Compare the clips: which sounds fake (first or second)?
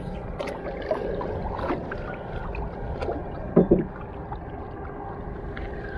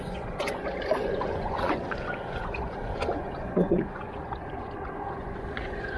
second